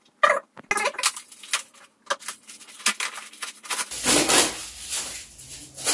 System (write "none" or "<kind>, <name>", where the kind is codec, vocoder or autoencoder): none